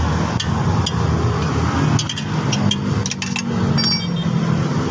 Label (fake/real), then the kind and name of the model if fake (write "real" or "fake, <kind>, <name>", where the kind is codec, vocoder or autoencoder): real